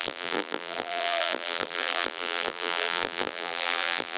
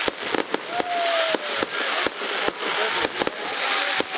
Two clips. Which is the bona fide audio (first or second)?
second